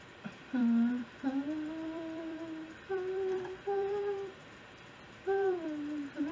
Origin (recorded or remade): remade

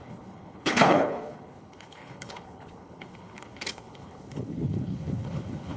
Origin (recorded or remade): remade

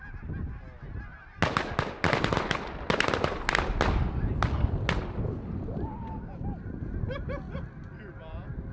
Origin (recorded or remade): recorded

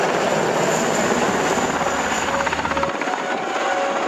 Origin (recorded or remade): recorded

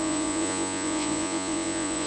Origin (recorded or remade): remade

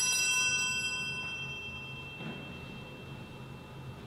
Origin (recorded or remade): recorded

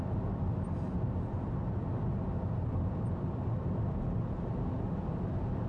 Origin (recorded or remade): recorded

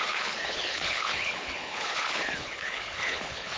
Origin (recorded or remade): remade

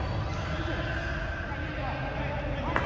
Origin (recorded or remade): recorded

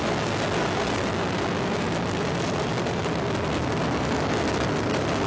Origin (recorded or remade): recorded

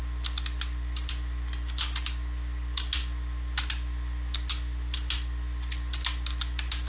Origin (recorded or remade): recorded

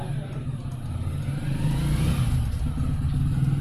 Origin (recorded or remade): recorded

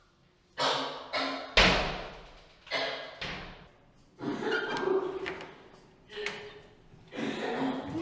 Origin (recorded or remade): recorded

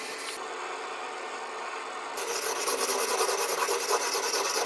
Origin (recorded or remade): recorded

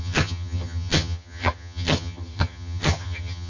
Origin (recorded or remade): remade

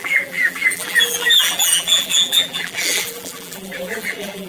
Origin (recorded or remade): remade